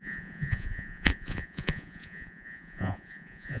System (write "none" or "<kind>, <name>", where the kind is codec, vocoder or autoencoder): vocoder, Vocos